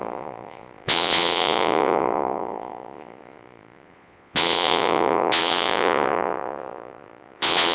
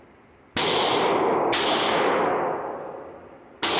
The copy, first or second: first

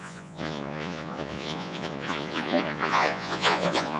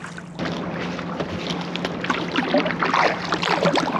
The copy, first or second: first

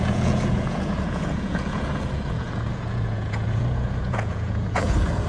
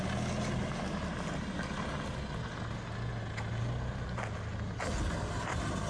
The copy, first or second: first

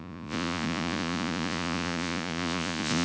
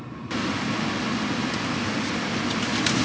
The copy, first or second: first